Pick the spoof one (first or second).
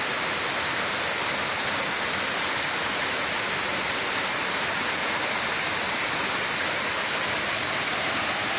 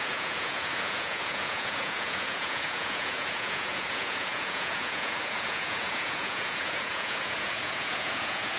second